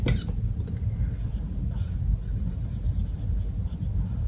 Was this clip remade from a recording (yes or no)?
no